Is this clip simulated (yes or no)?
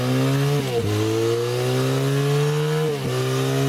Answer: no